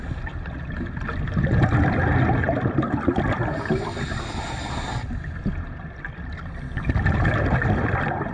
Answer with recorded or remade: recorded